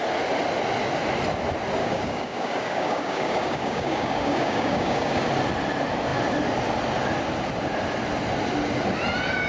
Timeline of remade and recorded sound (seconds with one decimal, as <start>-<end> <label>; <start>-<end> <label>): 0.0-1.8 recorded; 1.8-5.3 remade; 5.3-9.5 recorded